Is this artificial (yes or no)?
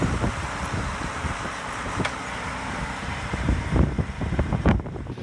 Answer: yes